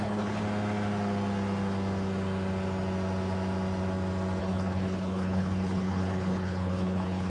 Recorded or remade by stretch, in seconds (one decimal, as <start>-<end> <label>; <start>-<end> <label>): 0.0-0.4 remade; 0.4-4.4 recorded; 4.4-7.3 remade